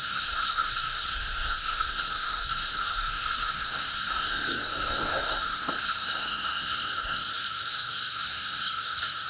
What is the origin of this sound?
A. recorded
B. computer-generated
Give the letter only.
B